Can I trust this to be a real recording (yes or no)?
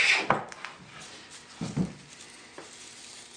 yes